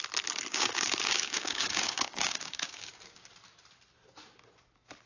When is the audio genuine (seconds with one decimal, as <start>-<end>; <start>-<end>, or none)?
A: 0.0-0.5; 3.3-5.1